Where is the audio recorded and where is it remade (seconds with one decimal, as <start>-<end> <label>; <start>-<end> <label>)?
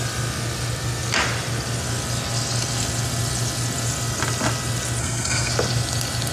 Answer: 0.0-5.0 recorded; 5.0-5.5 remade; 5.5-6.3 recorded